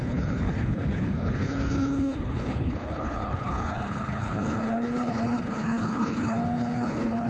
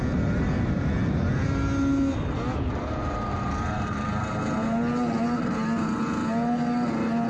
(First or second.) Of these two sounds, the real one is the second